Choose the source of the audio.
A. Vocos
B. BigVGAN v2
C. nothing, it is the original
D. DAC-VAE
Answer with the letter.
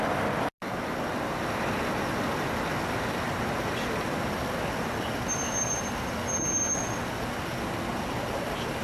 C